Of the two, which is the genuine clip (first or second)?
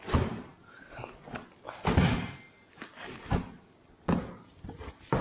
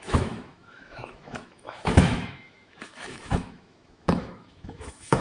first